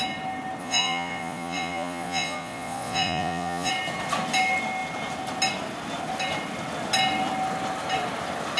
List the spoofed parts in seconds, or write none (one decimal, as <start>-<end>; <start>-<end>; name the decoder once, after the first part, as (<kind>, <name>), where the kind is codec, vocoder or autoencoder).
0.6-3.7 (vocoder, Vocos)